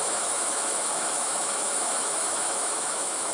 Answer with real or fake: fake